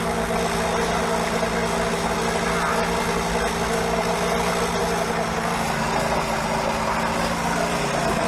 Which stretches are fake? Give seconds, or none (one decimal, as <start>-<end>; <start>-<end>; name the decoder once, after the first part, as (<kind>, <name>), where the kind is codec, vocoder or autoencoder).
none